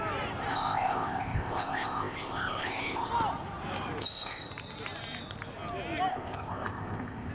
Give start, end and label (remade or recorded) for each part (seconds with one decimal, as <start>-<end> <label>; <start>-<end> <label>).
0.0-0.5 recorded; 0.5-3.1 remade; 3.1-4.0 recorded; 4.0-4.5 remade; 4.5-6.1 recorded; 6.1-7.3 remade